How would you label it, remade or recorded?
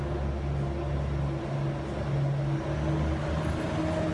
recorded